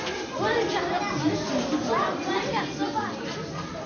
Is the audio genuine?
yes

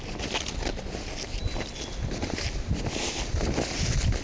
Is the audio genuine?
yes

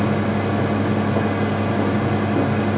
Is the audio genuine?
yes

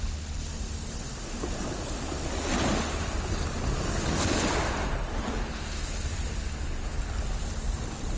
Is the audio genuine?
yes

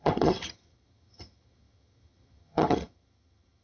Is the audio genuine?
no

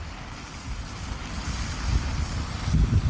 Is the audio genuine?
yes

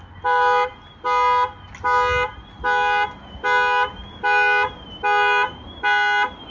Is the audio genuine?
yes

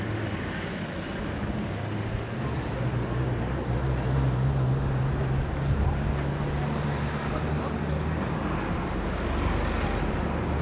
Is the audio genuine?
yes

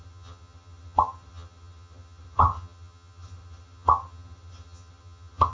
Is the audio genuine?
no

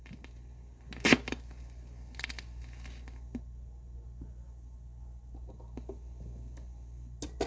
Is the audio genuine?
yes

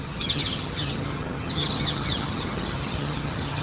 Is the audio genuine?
no